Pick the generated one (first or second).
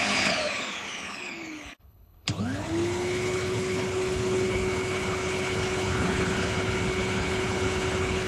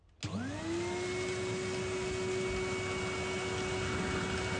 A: first